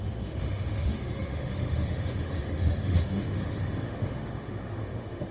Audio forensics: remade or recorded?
remade